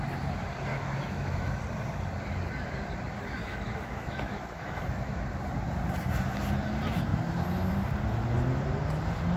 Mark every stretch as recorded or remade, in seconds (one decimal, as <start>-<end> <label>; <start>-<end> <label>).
0.0-0.7 recorded; 0.7-1.6 remade; 1.6-3.4 recorded; 3.4-5.2 remade; 5.2-9.4 recorded